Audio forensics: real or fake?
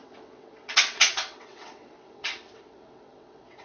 fake